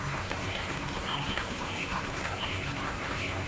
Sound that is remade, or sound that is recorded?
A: remade